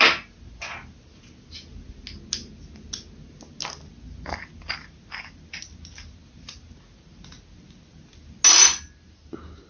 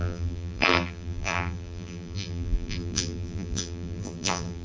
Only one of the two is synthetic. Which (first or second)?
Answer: second